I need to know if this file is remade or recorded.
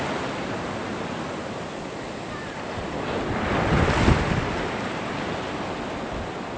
remade